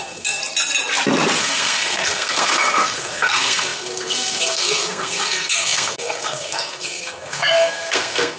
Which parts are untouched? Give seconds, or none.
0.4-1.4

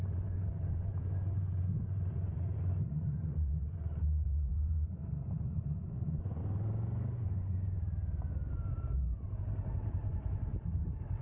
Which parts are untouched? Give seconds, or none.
6.4-7.3; 7.8-10.1; 10.5-11.2

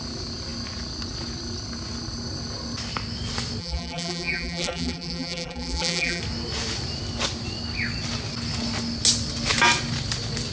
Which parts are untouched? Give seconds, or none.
0.0-3.6; 6.2-10.5